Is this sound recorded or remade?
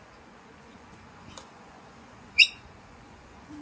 remade